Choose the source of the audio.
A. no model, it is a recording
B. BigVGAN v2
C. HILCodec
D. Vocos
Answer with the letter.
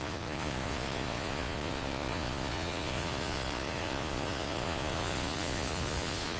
D